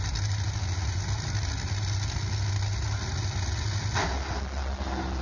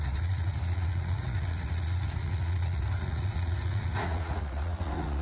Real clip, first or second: first